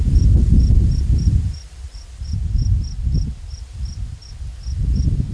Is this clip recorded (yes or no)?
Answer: yes